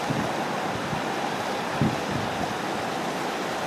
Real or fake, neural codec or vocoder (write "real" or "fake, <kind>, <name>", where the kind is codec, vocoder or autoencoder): real